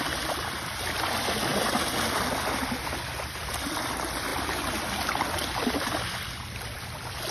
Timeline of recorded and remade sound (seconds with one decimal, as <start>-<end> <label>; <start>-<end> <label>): 0.0-4.3 recorded; 4.3-6.0 remade; 6.0-7.3 recorded